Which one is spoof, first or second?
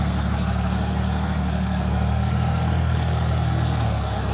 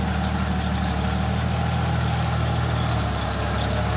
first